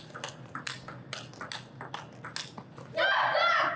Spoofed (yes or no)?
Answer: no